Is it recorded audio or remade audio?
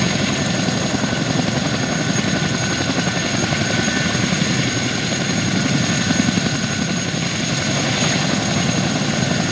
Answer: recorded